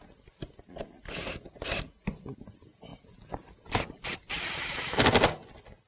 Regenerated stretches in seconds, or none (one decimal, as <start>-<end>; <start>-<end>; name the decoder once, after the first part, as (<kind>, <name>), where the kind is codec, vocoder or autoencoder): none